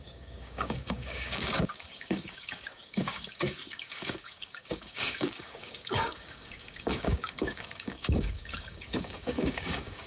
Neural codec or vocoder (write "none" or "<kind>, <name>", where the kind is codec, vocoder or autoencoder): codec, DAC